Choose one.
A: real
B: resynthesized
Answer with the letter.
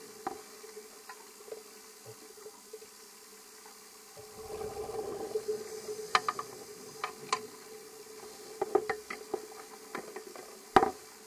A